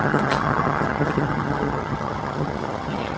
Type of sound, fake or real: fake